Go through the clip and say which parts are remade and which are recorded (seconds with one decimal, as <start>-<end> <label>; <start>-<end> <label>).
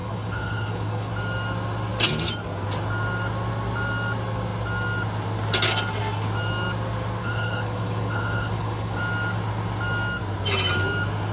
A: 0.0-1.1 remade; 1.1-7.2 recorded; 7.2-9.0 remade; 9.0-11.3 recorded